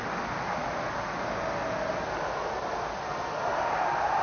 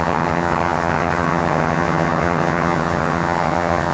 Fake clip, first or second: second